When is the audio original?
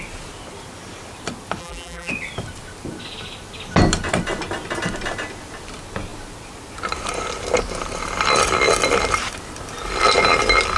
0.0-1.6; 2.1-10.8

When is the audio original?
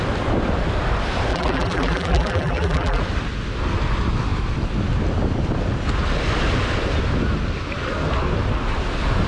0.0-1.3; 3.0-9.3